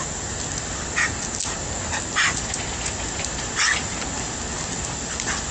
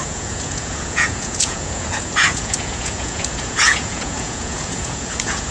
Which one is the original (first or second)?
first